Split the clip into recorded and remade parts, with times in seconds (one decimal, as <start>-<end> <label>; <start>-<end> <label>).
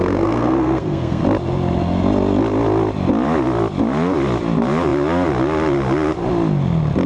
0.0-1.2 remade; 1.2-7.1 recorded